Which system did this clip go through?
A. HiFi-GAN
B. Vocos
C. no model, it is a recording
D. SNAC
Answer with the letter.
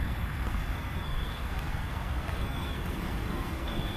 D